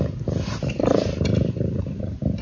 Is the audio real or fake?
fake